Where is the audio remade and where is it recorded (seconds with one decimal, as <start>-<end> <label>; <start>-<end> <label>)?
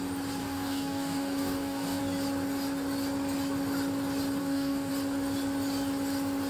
0.0-0.4 recorded; 0.4-2.0 remade; 2.0-4.4 recorded; 4.4-4.9 remade; 4.9-6.5 recorded